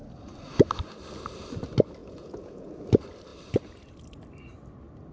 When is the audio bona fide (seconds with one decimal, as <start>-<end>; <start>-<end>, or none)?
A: 0.0-2.0; 2.7-5.1